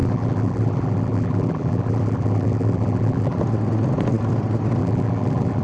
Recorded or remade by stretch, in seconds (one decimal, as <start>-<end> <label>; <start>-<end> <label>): 0.0-3.4 remade; 3.4-4.8 recorded; 4.8-5.6 remade